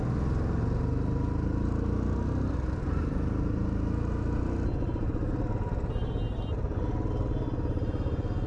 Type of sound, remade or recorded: recorded